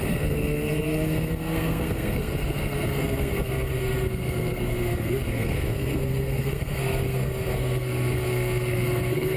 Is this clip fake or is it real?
fake